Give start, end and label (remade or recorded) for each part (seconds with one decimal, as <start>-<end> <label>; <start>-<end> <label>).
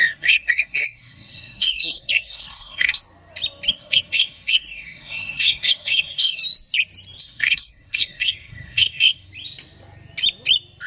0.0-3.0 remade; 3.0-3.7 recorded; 3.7-6.4 remade; 6.4-7.2 recorded; 7.2-9.3 remade; 9.3-10.9 recorded